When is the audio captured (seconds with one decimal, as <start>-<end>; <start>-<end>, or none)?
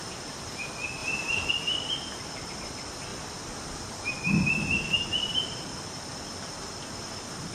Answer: 1.0-1.5; 3.1-4.1